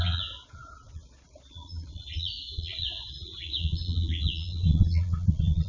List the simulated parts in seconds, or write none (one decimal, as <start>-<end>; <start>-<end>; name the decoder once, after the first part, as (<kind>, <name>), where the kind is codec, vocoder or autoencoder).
0.0-5.7 (vocoder, Vocos)